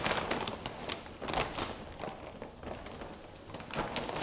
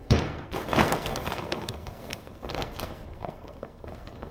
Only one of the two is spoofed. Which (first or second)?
second